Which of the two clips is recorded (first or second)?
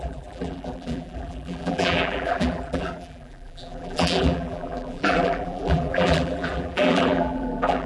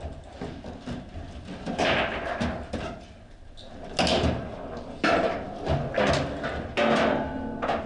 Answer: second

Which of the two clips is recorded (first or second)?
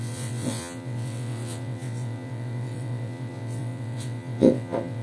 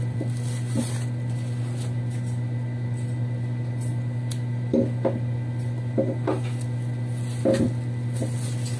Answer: second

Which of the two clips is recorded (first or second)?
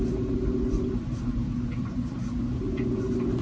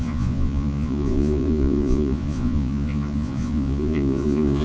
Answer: first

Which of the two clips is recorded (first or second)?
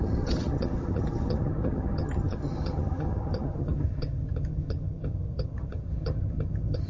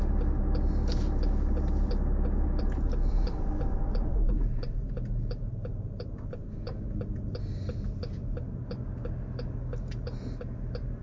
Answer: second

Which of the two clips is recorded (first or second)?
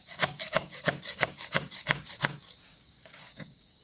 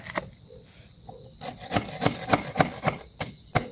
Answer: second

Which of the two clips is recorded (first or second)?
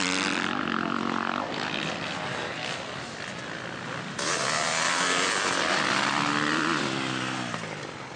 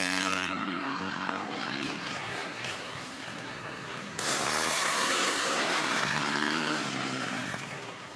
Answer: first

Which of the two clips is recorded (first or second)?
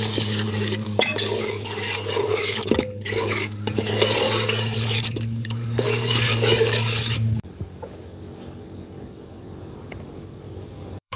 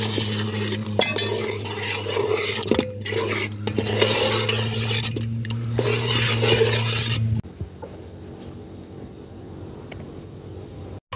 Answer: second